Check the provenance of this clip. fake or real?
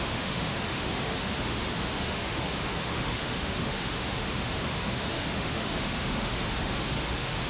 fake